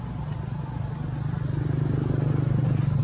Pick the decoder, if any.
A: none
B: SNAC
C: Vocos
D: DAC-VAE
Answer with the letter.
A